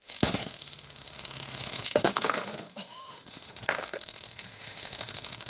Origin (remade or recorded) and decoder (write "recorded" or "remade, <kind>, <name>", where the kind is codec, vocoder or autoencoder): remade, autoencoder, DAC-VAE